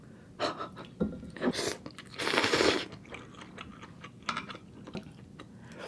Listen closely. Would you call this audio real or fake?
real